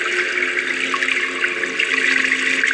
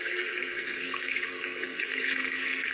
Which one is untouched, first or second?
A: first